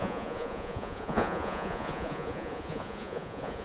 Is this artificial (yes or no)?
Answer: yes